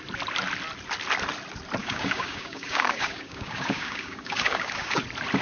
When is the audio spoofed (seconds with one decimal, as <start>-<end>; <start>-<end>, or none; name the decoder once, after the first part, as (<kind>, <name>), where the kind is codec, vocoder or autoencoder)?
1.8-5.0 (codec, DAC)